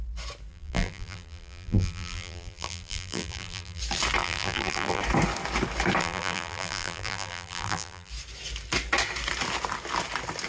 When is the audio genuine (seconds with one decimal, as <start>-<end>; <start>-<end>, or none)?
0.0-0.5; 3.8-4.2; 5.0-6.0; 8.1-10.5